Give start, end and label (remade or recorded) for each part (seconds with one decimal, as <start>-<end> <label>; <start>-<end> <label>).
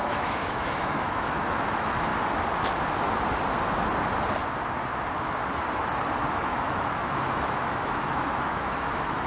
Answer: 0.0-2.1 remade; 2.1-6.3 recorded; 6.3-9.3 remade